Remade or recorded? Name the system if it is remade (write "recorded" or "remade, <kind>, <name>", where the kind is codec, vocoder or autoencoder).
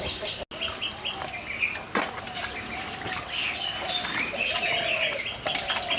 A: recorded